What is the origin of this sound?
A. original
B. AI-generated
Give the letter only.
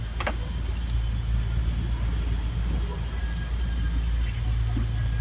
A